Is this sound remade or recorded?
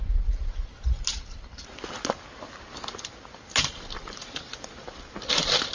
recorded